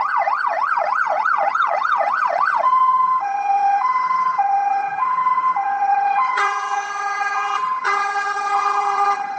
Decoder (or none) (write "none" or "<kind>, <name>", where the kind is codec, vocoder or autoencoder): vocoder, HiFi-GAN